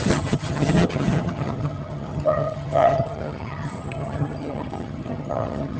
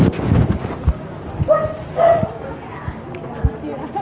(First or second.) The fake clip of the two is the first